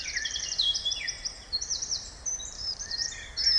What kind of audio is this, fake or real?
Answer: fake